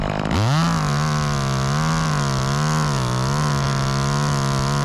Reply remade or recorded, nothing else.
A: recorded